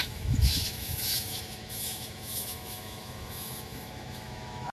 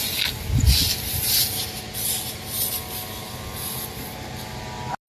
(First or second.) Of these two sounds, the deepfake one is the first